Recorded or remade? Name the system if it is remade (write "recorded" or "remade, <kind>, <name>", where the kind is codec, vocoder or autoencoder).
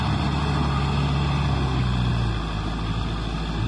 recorded